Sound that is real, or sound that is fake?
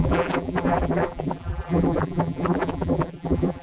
fake